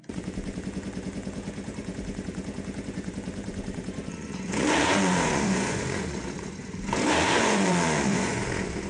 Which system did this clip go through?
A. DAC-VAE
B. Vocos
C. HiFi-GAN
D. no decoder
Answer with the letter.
B